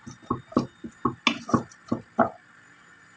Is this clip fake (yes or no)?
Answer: no